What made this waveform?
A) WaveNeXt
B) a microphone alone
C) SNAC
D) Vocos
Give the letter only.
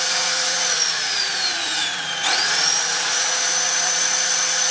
D